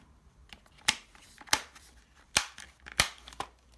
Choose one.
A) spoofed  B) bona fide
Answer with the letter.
A